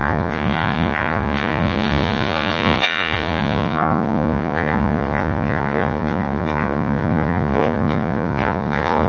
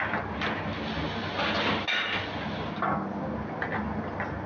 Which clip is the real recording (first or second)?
second